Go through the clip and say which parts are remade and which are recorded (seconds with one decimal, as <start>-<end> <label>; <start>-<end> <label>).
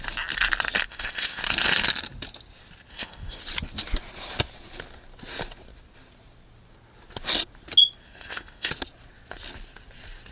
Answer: 0.0-0.9 recorded; 0.9-1.4 remade; 1.4-2.9 recorded; 2.9-3.4 remade; 3.4-8.0 recorded; 8.0-8.7 remade; 8.7-10.3 recorded